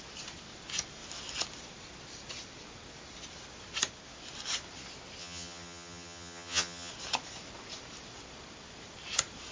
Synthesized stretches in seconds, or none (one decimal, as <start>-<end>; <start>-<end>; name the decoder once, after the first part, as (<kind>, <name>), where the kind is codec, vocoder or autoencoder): 5.2-6.9 (vocoder, HiFi-GAN)